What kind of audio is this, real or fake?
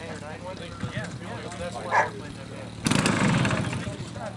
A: real